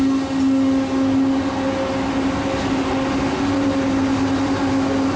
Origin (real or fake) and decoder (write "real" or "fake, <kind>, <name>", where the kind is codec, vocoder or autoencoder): real